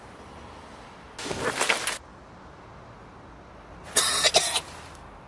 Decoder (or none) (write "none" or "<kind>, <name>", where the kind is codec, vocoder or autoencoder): none